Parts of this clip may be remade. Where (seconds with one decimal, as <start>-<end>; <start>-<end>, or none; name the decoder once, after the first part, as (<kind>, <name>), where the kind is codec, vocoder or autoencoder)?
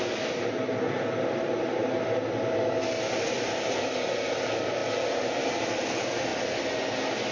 none